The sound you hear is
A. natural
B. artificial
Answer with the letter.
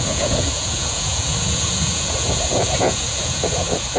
B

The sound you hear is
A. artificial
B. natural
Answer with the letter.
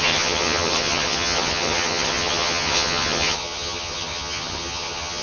A